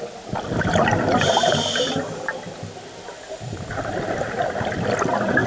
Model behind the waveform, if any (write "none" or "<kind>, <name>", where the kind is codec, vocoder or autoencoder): none